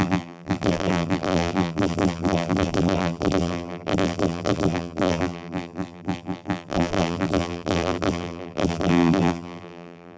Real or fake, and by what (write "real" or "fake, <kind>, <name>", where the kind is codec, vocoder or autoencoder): fake, vocoder, BigVGAN v2